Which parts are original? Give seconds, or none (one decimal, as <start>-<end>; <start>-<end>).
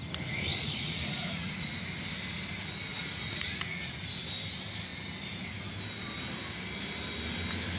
0.0-0.5; 1.8-2.9; 3.8-7.8